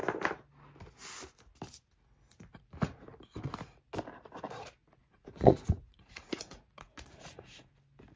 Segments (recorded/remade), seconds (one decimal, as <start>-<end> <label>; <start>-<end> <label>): 0.0-4.8 recorded; 4.8-7.7 remade; 7.7-8.2 recorded